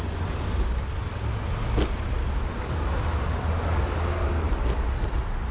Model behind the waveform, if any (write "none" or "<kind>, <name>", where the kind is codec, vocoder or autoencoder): none